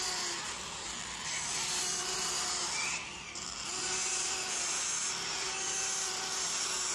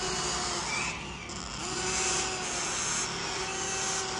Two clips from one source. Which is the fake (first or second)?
first